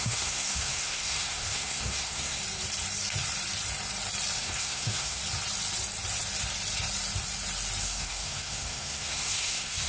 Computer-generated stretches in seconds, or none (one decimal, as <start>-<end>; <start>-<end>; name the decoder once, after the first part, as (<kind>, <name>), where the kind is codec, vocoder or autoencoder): 0.0-2.4 (codec, SNAC); 4.4-5.2; 7.8-9.9